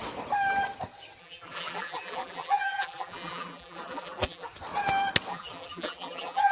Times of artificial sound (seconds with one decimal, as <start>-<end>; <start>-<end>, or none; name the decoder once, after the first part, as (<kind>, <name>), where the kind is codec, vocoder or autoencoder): 1.2-4.5 (vocoder, BigVGAN v2); 5.3-6.5